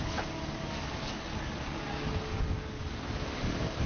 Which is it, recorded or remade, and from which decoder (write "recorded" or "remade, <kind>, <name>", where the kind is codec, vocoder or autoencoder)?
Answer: remade, codec, DAC